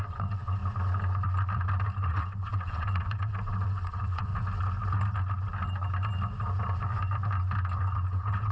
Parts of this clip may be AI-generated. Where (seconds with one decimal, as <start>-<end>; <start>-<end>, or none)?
0.0-0.6; 2.1-4.3; 8.1-8.5